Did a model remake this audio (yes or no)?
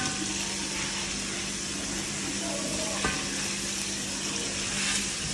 no